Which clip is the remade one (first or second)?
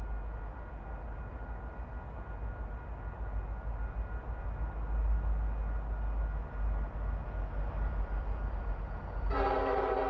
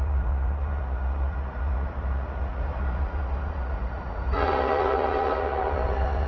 second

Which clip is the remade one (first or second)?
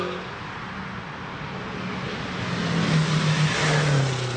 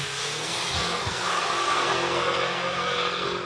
second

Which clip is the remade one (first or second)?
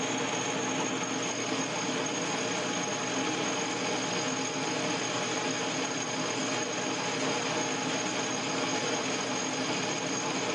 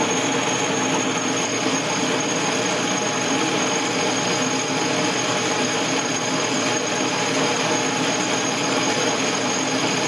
second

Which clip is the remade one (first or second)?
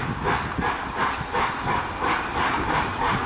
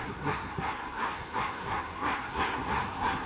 second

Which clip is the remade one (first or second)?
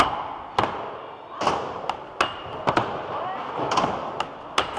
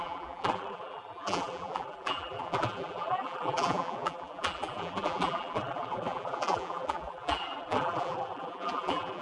second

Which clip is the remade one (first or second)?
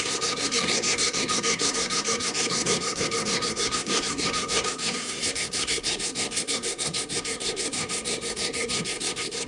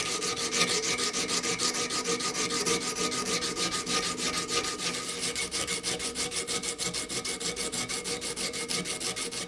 first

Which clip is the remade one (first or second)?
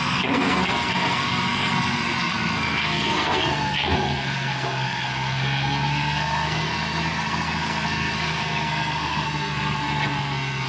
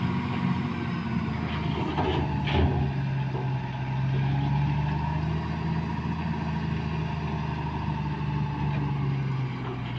first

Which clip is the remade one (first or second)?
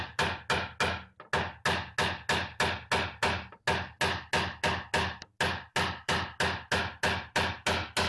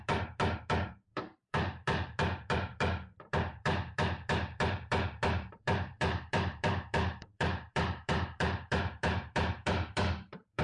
second